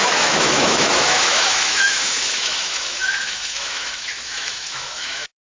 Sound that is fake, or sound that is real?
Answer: fake